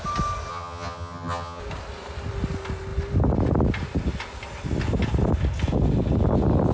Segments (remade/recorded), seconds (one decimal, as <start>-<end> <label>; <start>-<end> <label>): 0.0-0.5 recorded; 0.5-1.6 remade; 1.6-6.7 recorded